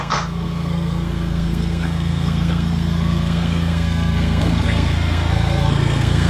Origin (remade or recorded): remade